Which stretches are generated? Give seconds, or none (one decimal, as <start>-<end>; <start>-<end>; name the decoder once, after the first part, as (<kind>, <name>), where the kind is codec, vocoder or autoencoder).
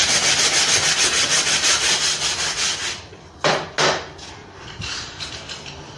0.0-3.2 (vocoder, BigVGAN v2); 4.4-5.3